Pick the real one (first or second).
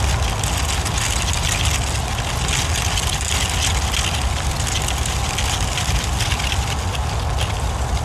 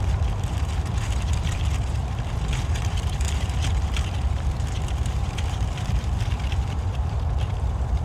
first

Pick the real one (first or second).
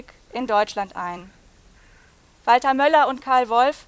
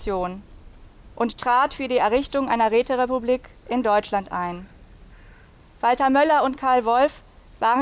second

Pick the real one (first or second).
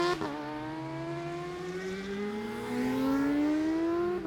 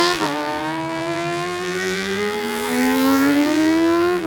first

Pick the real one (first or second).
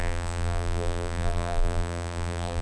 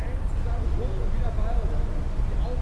second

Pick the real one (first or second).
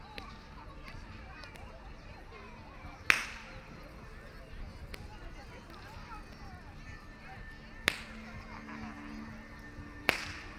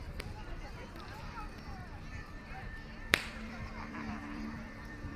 first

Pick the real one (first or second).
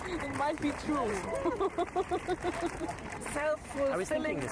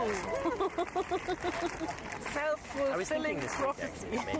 second